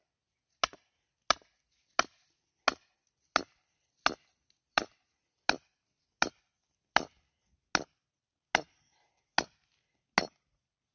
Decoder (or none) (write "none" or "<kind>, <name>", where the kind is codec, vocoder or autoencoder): none